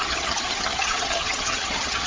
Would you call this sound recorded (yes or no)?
no